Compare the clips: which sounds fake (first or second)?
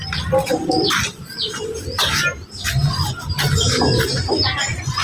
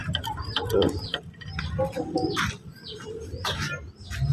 second